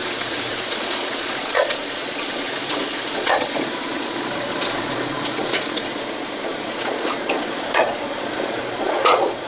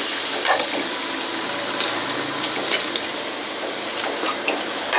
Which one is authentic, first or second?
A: second